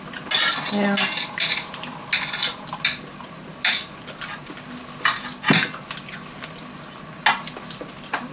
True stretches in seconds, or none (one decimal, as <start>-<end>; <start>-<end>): 0.0-8.3